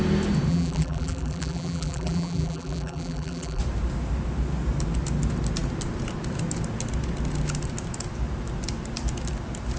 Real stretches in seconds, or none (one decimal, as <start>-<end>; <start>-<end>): 0.0-0.5; 3.6-9.8